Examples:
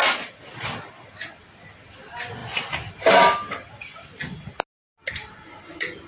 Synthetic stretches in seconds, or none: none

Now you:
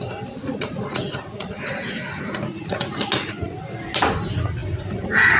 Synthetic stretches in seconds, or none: 0.4-3.6 (vocoder, Vocos); 4.6-5.4

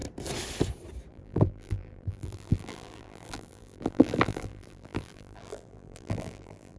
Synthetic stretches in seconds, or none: 1.1-6.8 (vocoder, BigVGAN v2)

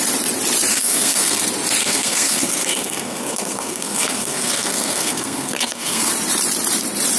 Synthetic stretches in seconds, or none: 0.7-1.4 (codec, SNAC); 1.8-6.1

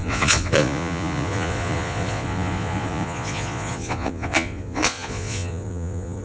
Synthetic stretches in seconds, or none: 0.0-6.2 (vocoder, Vocos)